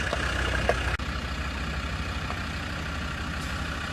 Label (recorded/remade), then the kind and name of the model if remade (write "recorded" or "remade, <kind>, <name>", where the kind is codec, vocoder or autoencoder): recorded